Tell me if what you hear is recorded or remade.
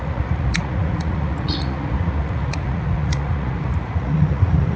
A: remade